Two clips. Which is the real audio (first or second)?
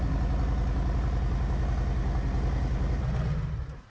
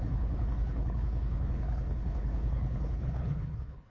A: first